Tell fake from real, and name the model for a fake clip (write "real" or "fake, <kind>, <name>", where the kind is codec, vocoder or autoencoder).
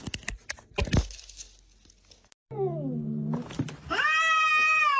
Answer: real